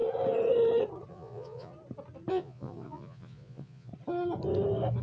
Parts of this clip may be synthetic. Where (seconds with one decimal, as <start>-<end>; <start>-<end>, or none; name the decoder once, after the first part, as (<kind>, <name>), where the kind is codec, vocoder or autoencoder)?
1.1-1.7 (vocoder, Vocos); 2.3-3.9

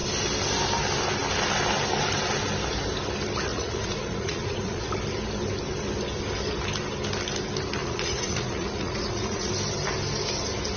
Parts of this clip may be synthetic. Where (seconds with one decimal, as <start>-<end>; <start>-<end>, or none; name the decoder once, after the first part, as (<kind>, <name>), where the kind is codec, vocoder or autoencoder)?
3.5-4.8 (vocoder, Vocos); 7.8-9.5

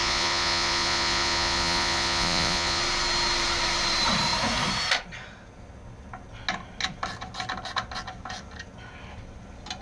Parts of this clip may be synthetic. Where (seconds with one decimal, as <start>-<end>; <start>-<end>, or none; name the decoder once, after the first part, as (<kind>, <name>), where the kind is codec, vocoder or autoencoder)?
0.0-2.8 (vocoder, Vocos)

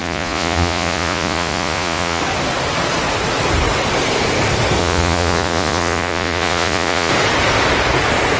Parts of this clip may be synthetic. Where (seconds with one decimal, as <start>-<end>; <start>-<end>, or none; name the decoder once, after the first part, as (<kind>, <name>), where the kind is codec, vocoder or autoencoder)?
0.0-2.2 (vocoder, Vocos); 4.8-7.1

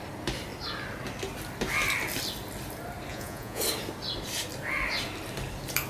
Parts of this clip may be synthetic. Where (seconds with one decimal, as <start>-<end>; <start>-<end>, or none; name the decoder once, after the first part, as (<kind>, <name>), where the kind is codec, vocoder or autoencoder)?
3.1-3.6 (vocoder, Vocos)

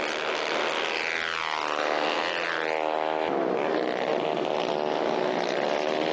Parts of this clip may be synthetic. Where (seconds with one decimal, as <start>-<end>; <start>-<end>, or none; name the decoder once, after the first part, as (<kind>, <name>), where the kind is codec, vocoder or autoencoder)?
none

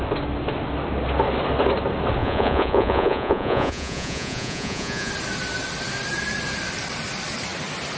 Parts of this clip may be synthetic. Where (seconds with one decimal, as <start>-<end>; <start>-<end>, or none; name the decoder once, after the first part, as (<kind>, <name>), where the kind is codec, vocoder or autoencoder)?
2.2-5.1 (vocoder, Vocos)

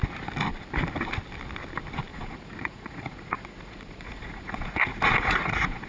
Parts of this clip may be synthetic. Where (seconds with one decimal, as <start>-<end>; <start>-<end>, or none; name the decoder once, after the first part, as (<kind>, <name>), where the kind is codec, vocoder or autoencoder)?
2.1-5.9 (vocoder, Vocos)